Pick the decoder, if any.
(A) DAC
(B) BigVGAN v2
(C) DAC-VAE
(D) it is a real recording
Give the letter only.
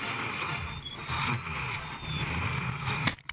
D